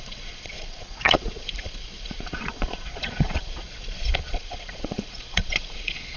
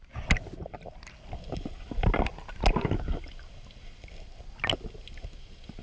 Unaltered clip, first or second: second